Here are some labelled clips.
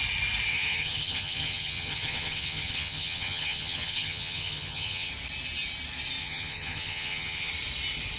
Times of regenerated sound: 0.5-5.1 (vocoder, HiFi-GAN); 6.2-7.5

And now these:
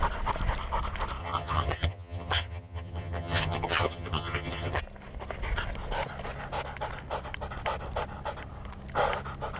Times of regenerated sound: 1.2-4.8 (vocoder, HiFi-GAN)

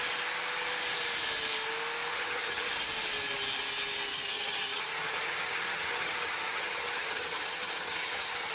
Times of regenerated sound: 2.1-2.7 (vocoder, HiFi-GAN); 4.1-8.5

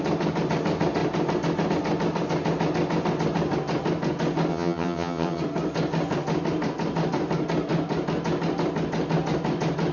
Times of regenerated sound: 4.5-5.4 (vocoder, HiFi-GAN)

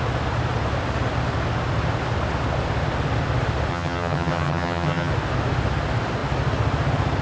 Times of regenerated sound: 3.7-5.1 (vocoder, HiFi-GAN)